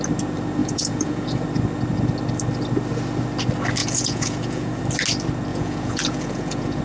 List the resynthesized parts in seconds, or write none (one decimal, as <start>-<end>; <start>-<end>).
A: 0.6-1.3; 3.8-4.8; 5.5-6.8